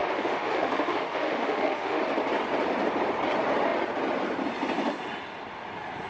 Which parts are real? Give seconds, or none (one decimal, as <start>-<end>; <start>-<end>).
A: 2.0-6.1